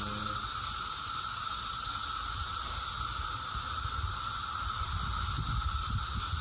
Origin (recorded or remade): recorded